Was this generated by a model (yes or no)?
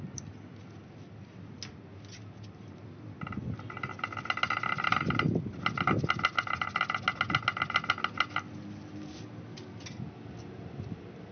no